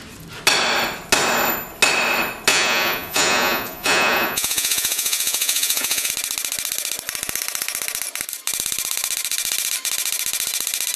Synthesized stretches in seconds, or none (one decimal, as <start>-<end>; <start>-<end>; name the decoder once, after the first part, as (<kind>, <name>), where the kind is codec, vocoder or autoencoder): 2.5-6.1 (vocoder, Vocos)